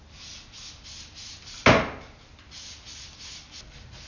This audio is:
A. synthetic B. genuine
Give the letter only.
B